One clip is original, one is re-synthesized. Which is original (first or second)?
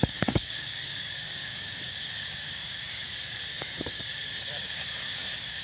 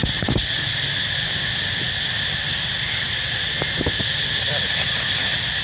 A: second